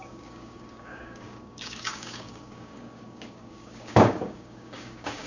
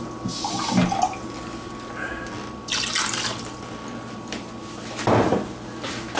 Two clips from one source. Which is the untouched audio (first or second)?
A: second